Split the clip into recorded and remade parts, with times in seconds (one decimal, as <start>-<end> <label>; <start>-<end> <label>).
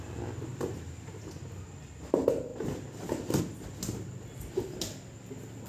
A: 0.0-0.5 recorded; 0.5-1.3 remade; 1.3-5.7 recorded